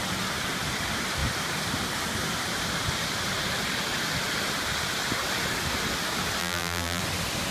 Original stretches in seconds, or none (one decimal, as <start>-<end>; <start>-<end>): 0.0-6.4; 7.0-7.5